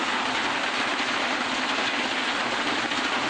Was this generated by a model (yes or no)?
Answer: no